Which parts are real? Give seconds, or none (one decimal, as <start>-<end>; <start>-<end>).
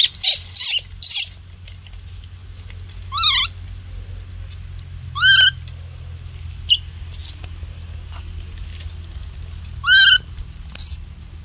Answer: 0.0-11.4